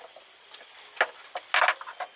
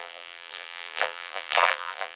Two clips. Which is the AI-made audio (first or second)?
second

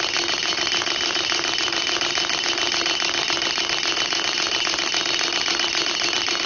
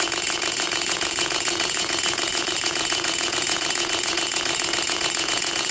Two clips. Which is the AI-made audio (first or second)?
second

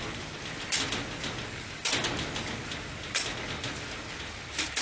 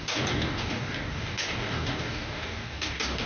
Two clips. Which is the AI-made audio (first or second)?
second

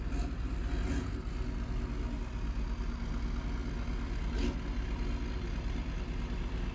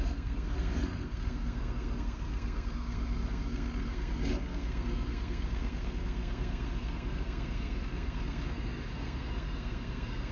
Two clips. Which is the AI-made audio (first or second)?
second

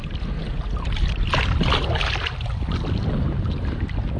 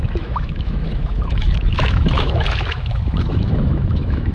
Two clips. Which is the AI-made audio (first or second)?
second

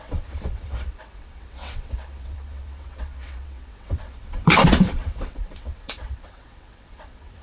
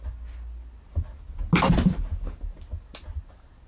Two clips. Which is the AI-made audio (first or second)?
first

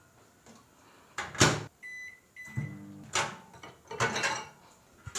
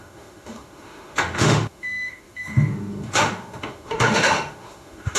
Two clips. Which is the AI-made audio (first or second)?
second